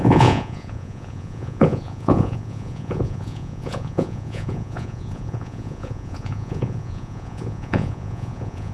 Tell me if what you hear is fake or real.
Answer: fake